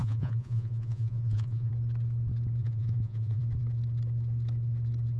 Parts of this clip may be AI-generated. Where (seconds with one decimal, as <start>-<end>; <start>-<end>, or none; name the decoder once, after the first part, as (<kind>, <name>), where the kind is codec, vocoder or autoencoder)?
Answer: 0.0-1.7 (vocoder, Vocos); 2.6-3.4